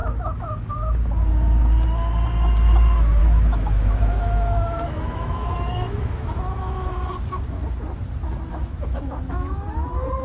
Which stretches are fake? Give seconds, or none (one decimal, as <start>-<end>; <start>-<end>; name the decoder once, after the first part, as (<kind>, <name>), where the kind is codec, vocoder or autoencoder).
0.0-0.7 (autoencoder, DAC-VAE); 3.2-7.0; 8.5-9.5